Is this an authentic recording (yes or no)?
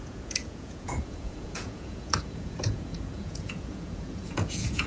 no